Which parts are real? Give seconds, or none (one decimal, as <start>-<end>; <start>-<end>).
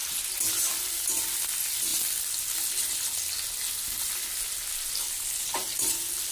0.0-6.3